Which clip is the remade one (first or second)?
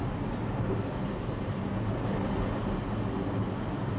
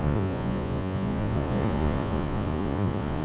second